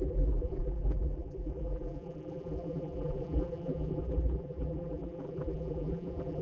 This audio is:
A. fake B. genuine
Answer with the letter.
A